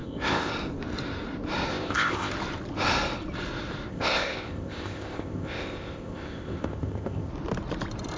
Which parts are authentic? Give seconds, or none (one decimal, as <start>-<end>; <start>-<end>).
0.5-1.7; 2.3-3.9; 7.3-8.2